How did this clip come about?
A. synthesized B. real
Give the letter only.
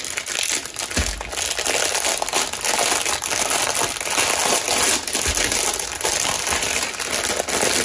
B